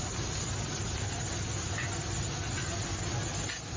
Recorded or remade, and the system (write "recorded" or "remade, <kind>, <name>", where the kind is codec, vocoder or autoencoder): remade, vocoder, BigVGAN v2